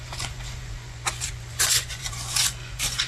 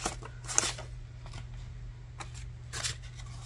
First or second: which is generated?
first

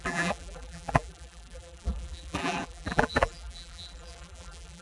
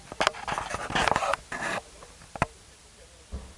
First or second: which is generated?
first